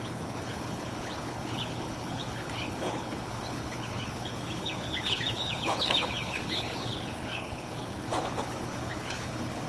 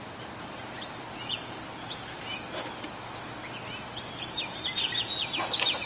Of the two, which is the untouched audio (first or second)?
second